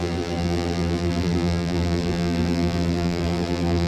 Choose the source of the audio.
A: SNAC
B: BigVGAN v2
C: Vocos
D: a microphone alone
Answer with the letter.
B